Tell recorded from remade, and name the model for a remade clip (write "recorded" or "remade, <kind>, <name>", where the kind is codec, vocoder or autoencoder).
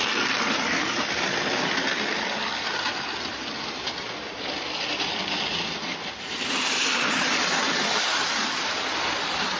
recorded